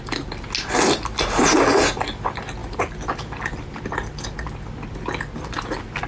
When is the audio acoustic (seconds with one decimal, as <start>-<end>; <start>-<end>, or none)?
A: 0.0-2.6; 3.9-6.1